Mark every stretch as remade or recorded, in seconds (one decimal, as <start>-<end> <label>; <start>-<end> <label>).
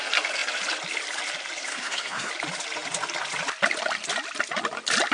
0.0-1.7 recorded; 1.7-2.3 remade; 2.3-5.1 recorded